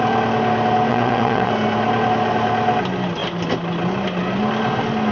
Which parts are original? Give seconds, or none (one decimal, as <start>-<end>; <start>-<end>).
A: 0.0-0.9; 1.5-5.1